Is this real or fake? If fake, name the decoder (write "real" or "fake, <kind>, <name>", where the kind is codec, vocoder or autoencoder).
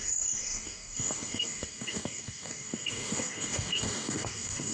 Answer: fake, codec, DAC